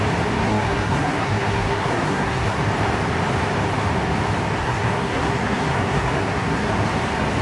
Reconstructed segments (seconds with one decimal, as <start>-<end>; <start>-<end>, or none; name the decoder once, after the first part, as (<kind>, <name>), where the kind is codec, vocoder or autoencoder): 0.4-2.6 (codec, SNAC); 4.6-6.7